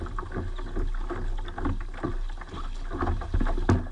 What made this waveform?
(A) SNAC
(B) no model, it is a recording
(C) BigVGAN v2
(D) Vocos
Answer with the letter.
B